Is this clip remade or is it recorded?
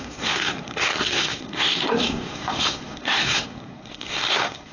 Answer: remade